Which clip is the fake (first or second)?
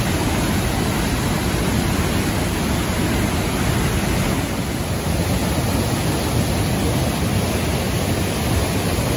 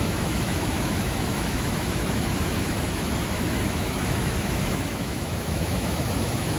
second